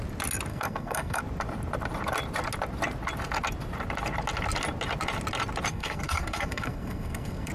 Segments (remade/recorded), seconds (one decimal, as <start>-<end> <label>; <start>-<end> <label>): 0.0-0.5 recorded; 0.5-1.2 remade; 1.2-5.7 recorded; 5.7-7.5 remade